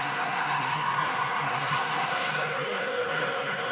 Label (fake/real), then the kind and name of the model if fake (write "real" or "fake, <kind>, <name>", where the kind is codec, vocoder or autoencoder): fake, codec, SNAC